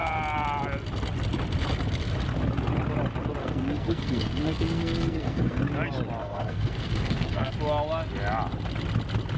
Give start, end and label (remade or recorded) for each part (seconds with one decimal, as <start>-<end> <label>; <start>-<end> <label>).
0.0-3.4 recorded; 3.4-5.6 remade; 5.6-6.2 recorded; 6.2-7.5 remade; 7.5-9.4 recorded